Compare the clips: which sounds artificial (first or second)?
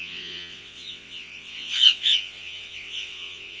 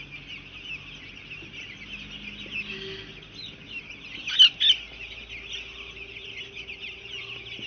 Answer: first